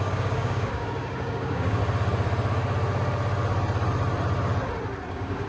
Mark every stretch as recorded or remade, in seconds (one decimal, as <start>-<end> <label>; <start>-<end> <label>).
0.0-1.8 remade; 1.8-5.1 recorded; 5.1-5.5 remade